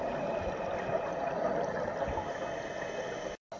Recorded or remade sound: recorded